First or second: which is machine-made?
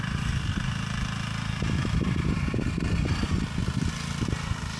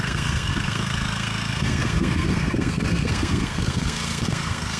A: second